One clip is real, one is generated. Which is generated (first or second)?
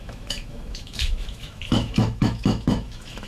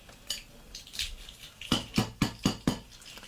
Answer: first